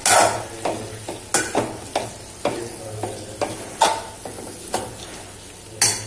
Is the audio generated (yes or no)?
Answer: no